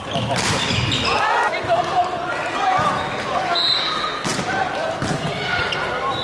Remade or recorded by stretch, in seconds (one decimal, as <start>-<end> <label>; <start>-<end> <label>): 0.0-4.3 recorded; 4.3-5.0 remade; 5.0-6.2 recorded